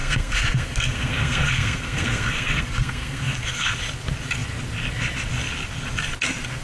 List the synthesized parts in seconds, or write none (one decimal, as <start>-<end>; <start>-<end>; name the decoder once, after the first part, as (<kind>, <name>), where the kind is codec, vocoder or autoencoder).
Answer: 0.0-3.7 (codec, SNAC)